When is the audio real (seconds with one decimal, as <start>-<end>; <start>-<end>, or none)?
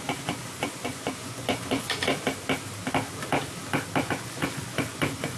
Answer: 2.1-4.0